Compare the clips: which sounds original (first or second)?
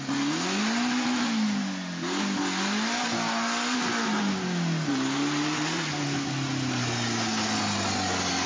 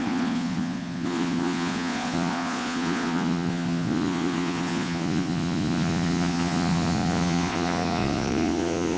first